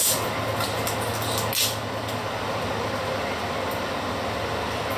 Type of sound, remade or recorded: recorded